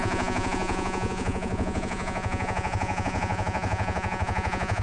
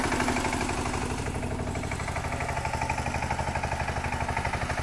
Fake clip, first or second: first